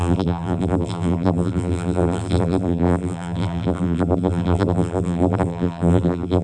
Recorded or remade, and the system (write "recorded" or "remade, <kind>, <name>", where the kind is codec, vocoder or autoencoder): remade, vocoder, BigVGAN v2